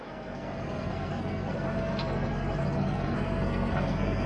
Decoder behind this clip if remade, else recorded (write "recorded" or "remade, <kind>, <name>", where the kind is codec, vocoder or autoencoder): remade, codec, SNAC